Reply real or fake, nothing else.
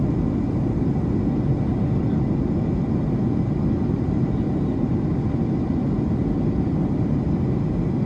real